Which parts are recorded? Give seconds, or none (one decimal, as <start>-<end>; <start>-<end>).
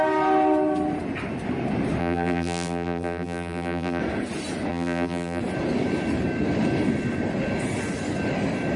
0.0-2.0; 4.0-4.7; 5.4-8.8